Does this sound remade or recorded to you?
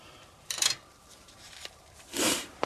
remade